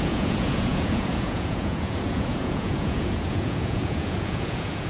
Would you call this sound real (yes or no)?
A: no